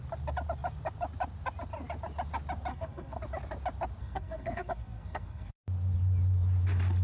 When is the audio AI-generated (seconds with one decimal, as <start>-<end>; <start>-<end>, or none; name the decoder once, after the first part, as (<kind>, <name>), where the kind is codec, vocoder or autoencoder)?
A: 2.7-3.2 (codec, SNAC); 4.0-5.5